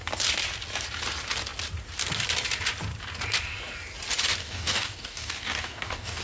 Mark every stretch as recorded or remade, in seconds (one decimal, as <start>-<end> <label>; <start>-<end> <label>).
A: 0.0-4.4 recorded; 4.4-6.2 remade